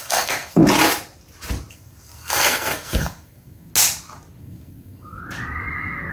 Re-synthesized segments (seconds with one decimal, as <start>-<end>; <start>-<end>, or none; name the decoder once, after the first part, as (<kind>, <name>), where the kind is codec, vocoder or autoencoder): 0.0-0.6 (codec, SNAC); 1.7-3.7; 4.4-5.2